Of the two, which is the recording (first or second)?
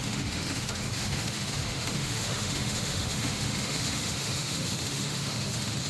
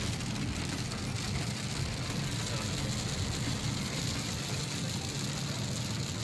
second